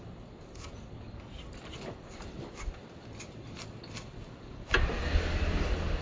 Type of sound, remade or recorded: recorded